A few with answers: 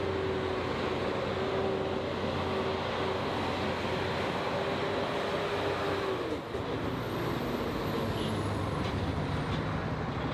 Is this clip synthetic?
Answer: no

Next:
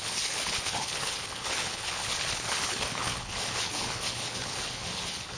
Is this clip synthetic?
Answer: yes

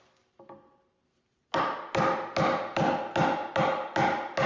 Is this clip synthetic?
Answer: no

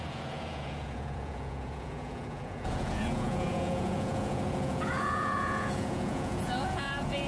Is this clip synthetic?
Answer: yes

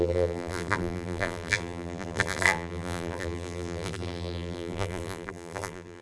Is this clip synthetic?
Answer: yes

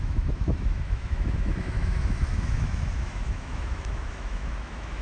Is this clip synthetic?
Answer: yes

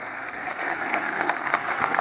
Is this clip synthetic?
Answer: yes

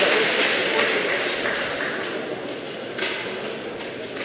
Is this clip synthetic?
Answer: no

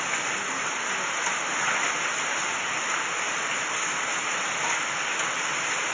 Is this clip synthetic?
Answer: no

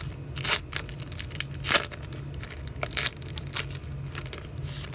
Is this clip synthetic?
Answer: no